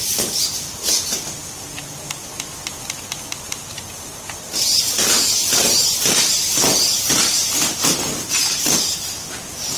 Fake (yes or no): no